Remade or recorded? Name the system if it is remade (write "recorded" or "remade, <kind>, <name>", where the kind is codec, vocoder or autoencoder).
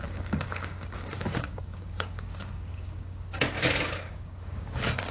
remade, codec, DAC